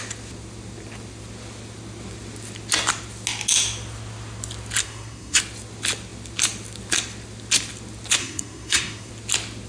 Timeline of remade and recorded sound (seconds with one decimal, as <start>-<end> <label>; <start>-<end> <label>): 0.0-4.8 recorded; 4.8-5.4 remade; 5.4-8.2 recorded; 8.2-9.1 remade; 9.1-9.7 recorded